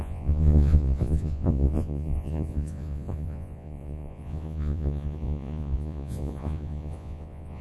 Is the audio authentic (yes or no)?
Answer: no